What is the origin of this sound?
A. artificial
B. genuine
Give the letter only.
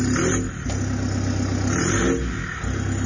B